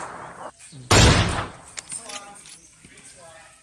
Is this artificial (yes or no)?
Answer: no